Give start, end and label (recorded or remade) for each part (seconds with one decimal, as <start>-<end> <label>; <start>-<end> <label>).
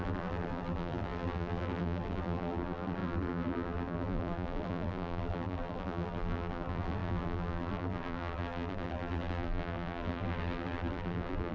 0.0-11.5 remade